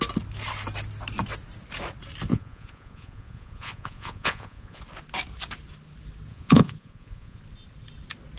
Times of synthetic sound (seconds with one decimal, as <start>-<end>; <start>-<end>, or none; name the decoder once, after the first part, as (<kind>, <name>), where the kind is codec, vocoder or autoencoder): 2.3-4.8 (vocoder, Vocos); 6.3-7.4